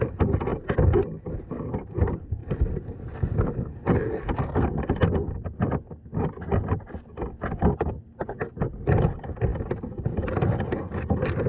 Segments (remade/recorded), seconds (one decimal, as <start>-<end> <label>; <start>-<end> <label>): 0.0-11.5 recorded